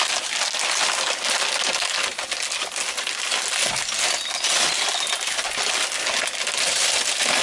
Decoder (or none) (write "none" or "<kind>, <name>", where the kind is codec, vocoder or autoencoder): none